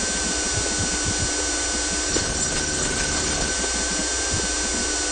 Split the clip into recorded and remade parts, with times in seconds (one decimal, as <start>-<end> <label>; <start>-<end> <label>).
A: 0.0-2.1 recorded; 2.1-3.5 remade; 3.5-5.1 recorded